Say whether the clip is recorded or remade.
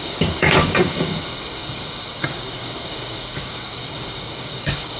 remade